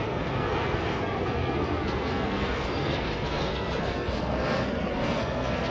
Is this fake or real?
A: fake